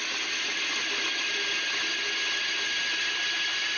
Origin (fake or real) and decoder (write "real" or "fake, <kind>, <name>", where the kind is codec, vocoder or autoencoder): real